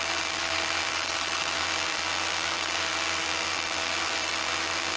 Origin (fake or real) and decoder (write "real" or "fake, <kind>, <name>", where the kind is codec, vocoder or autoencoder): fake, vocoder, BigVGAN v2